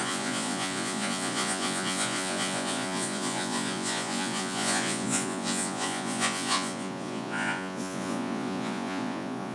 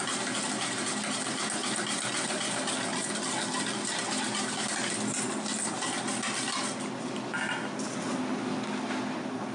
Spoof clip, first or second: first